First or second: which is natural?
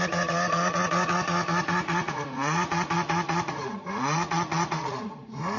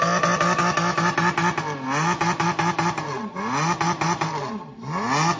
second